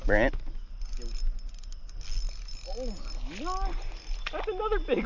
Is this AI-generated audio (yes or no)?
no